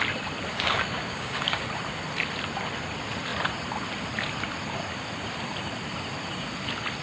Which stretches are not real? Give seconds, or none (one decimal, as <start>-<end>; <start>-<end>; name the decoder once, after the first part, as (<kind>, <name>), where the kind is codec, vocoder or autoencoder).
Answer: 0.5-1.7 (codec, DAC)